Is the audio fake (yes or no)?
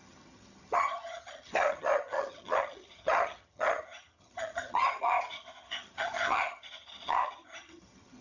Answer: yes